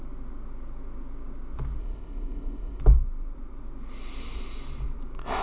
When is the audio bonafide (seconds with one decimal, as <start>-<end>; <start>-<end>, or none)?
0.0-1.8; 2.8-5.4